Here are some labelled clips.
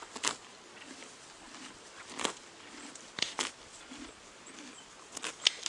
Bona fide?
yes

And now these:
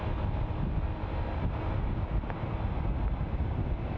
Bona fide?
yes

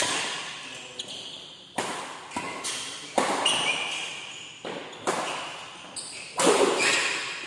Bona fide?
yes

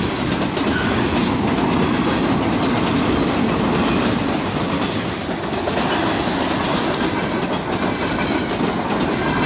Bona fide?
yes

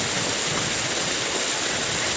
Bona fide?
yes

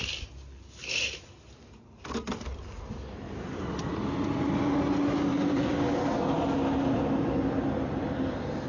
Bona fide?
yes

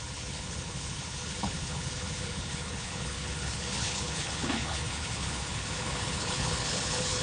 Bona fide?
no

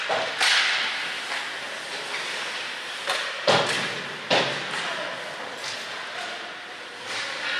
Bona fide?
yes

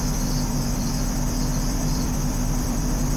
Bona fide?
no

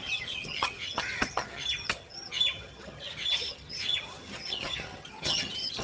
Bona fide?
no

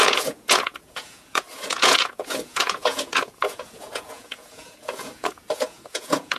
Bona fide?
no